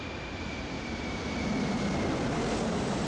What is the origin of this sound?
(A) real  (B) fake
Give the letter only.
A